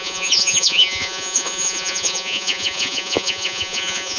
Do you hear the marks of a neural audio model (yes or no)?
yes